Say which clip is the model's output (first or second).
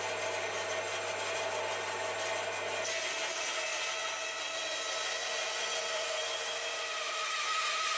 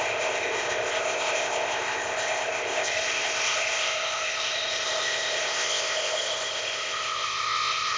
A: second